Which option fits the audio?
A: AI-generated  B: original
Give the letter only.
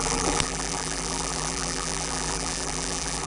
A